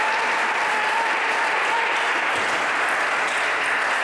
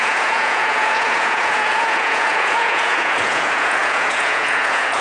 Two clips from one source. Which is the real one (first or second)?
first